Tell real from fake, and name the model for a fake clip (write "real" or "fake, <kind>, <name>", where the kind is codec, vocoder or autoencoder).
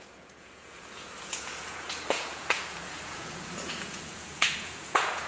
fake, vocoder, Vocos